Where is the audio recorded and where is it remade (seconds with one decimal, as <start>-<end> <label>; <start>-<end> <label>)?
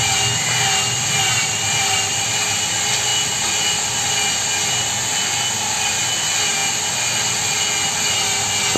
0.0-3.1 recorded; 3.1-4.1 remade; 4.1-8.8 recorded